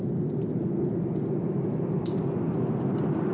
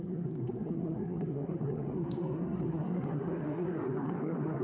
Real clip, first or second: first